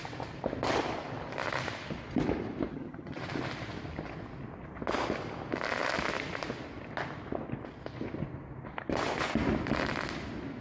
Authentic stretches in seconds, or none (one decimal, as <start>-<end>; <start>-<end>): 0.0-2.7; 3.2-10.6